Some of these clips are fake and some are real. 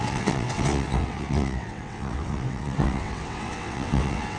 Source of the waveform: fake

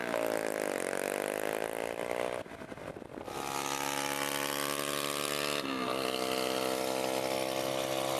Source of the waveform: real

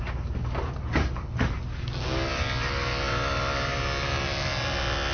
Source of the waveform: real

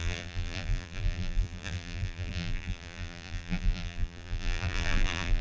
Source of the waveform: fake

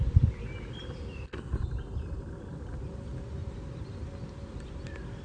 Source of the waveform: real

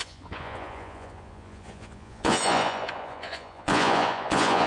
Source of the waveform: fake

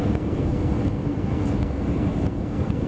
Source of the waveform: fake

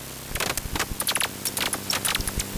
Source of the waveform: real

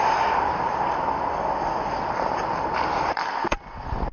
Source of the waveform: real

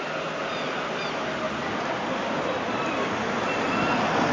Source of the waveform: real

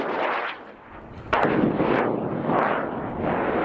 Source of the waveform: real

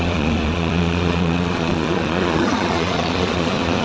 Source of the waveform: fake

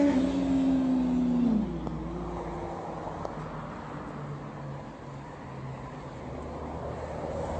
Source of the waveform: real